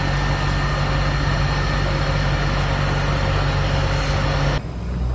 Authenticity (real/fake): real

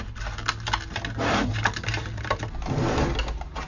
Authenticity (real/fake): real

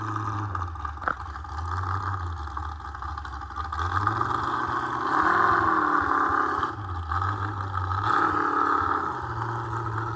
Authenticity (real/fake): real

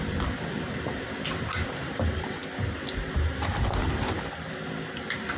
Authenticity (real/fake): real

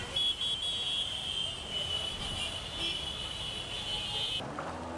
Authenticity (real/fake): real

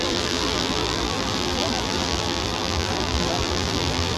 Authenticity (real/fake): fake